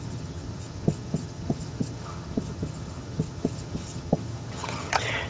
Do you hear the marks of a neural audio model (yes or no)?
yes